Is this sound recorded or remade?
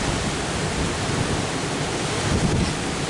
recorded